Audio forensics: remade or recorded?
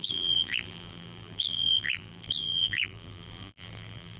remade